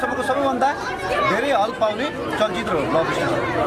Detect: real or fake real